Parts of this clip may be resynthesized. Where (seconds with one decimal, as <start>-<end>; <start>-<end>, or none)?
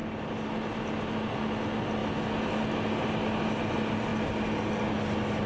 none